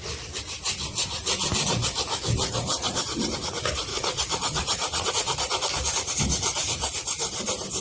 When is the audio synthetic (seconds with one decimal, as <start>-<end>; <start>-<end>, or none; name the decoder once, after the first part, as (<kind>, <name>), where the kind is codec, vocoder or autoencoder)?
3.9-5.1 (vocoder, Vocos)